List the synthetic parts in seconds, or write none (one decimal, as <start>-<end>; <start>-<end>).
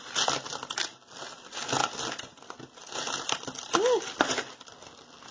none